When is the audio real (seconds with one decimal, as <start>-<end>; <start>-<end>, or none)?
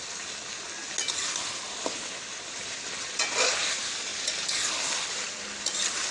0.0-6.1